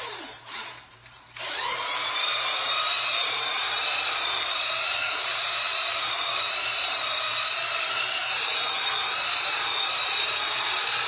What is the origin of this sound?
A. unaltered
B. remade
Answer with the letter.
B